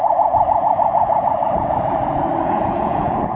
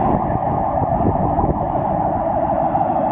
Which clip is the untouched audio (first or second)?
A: second